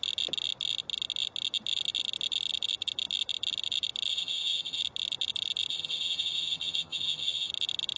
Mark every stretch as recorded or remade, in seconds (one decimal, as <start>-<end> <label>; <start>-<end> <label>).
0.0-4.1 recorded; 4.1-4.8 remade; 4.8-5.7 recorded; 5.7-7.5 remade; 7.5-8.0 recorded